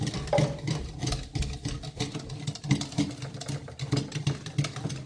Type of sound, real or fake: real